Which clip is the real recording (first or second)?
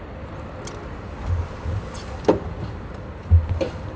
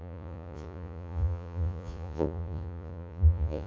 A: first